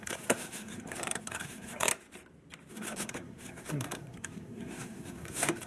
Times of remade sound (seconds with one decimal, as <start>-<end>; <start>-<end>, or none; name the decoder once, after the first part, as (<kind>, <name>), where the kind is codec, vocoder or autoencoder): 0.0-1.9 (codec, SNAC); 2.7-5.7